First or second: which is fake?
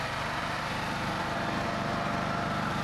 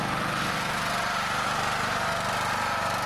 first